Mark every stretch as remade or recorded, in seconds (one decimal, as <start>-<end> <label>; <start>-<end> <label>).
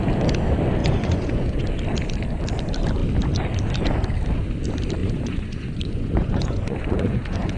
0.0-0.8 recorded; 0.8-1.6 remade; 1.6-5.0 recorded; 5.0-7.6 remade